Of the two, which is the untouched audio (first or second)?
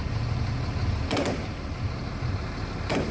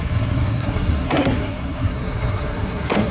first